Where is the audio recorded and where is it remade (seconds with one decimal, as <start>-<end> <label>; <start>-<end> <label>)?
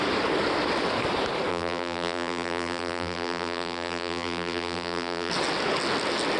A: 0.0-1.5 recorded; 1.5-5.3 remade; 5.3-6.4 recorded